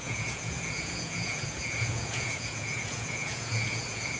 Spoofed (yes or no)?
yes